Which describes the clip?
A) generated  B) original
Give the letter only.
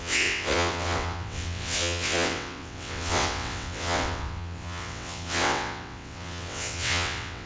A